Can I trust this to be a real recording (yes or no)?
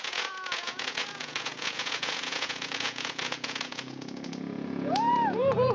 no